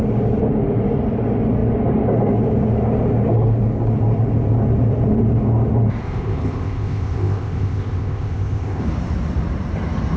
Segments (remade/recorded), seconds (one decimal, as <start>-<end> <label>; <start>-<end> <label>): 0.0-6.0 recorded; 6.0-8.8 remade; 8.8-10.2 recorded